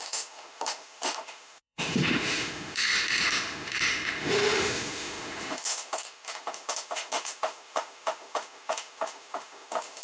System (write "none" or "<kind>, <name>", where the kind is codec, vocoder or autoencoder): autoencoder, DAC-VAE